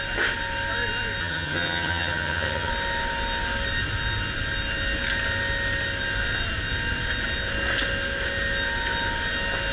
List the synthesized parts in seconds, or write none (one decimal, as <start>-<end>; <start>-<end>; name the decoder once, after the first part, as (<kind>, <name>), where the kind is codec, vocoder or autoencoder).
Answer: 1.2-2.7 (vocoder, HiFi-GAN)